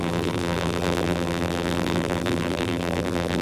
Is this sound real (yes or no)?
no